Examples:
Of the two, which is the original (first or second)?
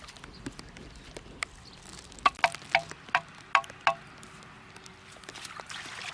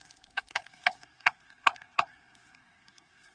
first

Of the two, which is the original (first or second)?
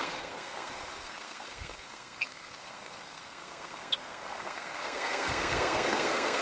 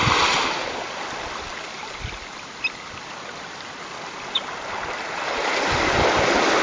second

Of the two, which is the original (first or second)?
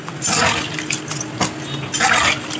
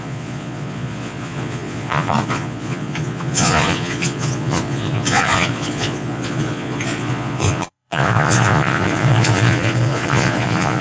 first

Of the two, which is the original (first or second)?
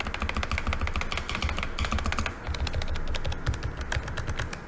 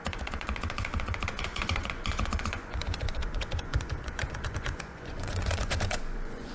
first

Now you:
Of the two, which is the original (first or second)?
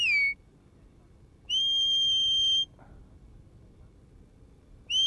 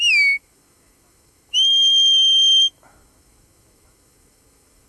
first